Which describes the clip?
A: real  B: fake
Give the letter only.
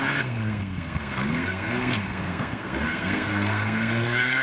B